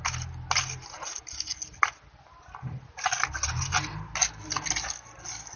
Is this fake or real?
real